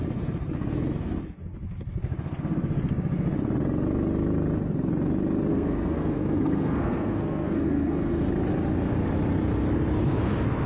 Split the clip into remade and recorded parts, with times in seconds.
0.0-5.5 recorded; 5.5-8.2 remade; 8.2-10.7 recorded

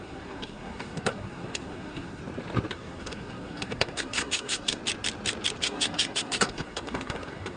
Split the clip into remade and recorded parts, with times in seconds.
0.0-2.2 remade; 2.2-2.7 recorded; 2.7-4.8 remade; 4.8-5.6 recorded; 5.6-7.6 remade

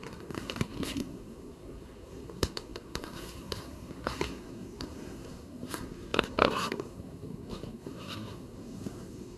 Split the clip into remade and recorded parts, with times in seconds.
0.0-9.4 remade

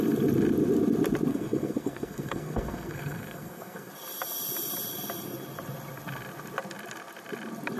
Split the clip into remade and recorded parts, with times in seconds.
0.0-1.3 recorded; 1.3-3.9 remade; 3.9-7.8 recorded

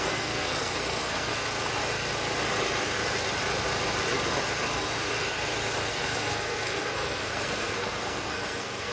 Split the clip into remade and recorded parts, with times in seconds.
0.0-1.3 remade; 1.3-5.9 recorded; 5.9-8.9 remade

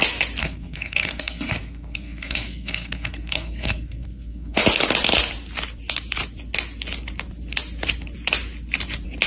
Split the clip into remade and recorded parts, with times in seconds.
0.0-0.4 recorded; 0.4-4.6 remade; 4.6-9.3 recorded

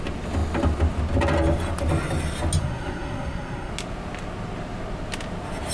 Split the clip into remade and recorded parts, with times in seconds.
0.0-2.6 recorded; 2.6-3.7 remade; 3.7-5.7 recorded